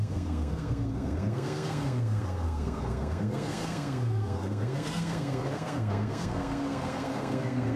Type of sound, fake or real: fake